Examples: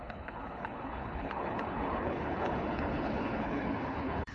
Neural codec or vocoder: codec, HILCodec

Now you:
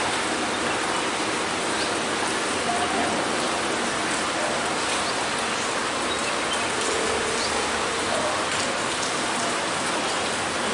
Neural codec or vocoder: none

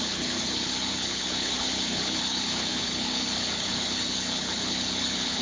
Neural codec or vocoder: codec, HILCodec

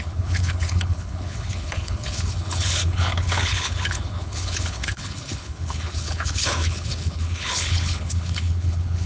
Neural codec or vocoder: codec, HILCodec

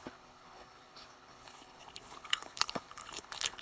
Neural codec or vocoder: codec, HILCodec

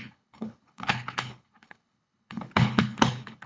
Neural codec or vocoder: codec, HILCodec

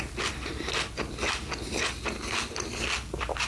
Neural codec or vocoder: none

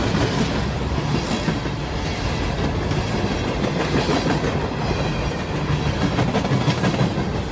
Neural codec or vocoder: none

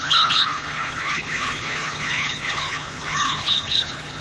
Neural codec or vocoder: codec, HILCodec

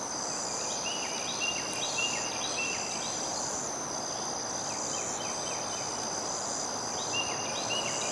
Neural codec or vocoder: none